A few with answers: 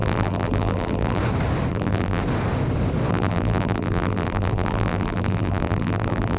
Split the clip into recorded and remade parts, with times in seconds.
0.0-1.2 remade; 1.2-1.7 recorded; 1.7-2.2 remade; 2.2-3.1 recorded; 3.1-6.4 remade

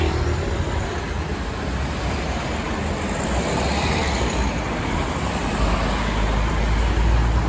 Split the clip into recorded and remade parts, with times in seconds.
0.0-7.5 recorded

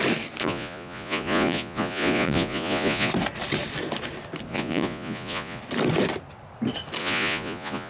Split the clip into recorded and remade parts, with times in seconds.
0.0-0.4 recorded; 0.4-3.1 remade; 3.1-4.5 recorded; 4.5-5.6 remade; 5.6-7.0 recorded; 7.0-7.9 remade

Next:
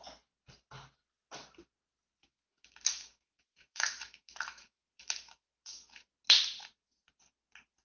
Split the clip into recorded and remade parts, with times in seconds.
0.0-2.2 recorded; 2.2-6.1 remade; 6.1-7.8 recorded

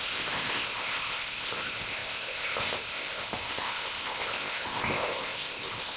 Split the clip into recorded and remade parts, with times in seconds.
0.0-6.0 remade